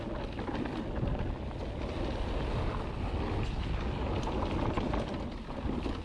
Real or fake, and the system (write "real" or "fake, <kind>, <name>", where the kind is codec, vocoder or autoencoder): real